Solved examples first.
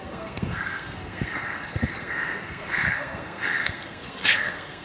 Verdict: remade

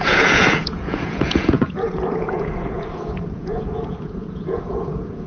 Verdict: remade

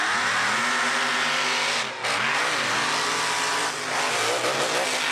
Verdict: recorded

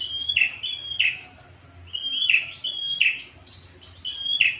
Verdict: recorded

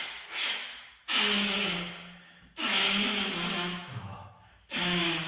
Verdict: remade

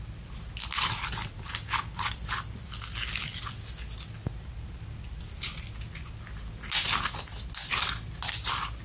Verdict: recorded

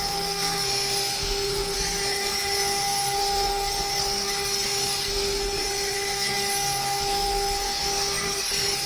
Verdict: remade